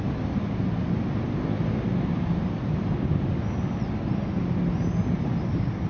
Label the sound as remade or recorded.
recorded